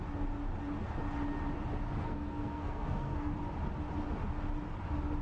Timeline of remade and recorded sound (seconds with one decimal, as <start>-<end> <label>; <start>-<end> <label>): 0.0-2.0 recorded; 2.0-3.3 remade; 3.3-5.2 recorded